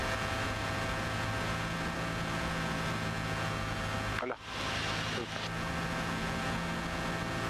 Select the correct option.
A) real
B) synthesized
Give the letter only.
A